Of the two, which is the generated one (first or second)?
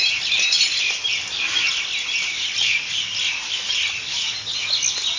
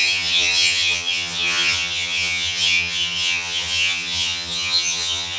second